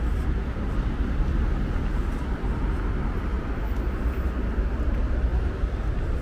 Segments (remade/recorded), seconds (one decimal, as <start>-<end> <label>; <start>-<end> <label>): 0.0-6.2 recorded